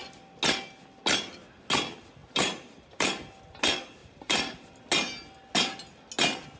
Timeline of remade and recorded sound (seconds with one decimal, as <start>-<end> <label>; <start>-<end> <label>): 0.0-2.2 recorded; 2.2-3.1 remade; 3.1-4.0 recorded; 4.0-4.9 remade; 4.9-6.6 recorded